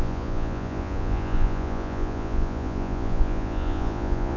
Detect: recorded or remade remade